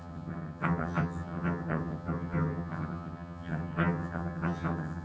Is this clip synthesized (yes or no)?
yes